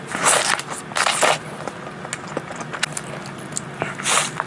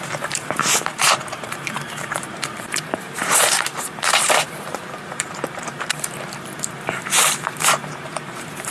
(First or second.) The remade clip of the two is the second